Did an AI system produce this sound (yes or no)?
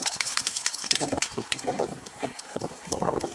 yes